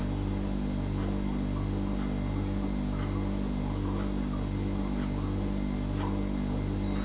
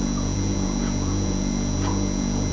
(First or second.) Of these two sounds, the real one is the first